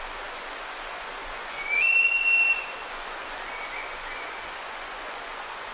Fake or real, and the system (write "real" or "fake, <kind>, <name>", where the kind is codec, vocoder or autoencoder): fake, vocoder, Vocos